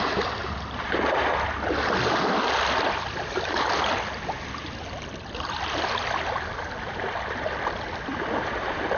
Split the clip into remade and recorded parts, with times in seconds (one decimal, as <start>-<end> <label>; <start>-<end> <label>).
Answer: 0.0-0.4 recorded; 0.4-1.0 remade; 1.0-9.0 recorded